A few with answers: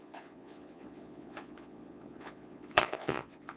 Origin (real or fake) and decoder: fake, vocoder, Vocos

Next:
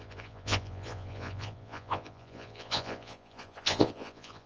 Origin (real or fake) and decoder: fake, vocoder, Vocos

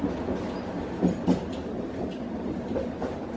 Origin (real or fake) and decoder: real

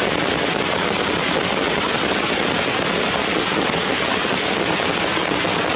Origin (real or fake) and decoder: real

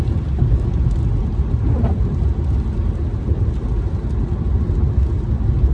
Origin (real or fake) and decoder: real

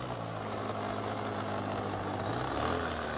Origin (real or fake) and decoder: real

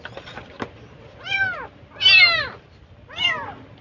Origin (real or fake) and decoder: real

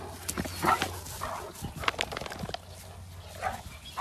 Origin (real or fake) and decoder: real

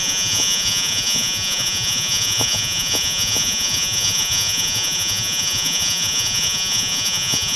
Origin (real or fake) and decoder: fake, vocoder, Vocos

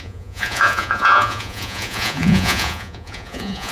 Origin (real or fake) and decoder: fake, vocoder, Vocos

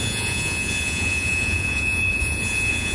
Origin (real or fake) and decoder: fake, vocoder, Vocos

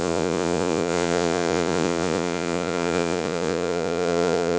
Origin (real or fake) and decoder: fake, vocoder, Vocos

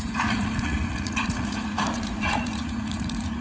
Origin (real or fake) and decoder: fake, vocoder, Vocos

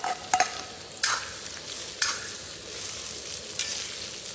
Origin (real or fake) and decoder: real